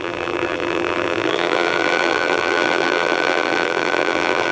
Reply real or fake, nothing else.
fake